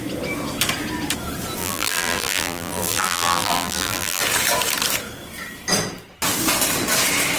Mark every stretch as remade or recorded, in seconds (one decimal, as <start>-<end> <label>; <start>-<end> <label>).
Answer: 0.0-1.6 recorded; 1.6-4.2 remade; 4.2-7.4 recorded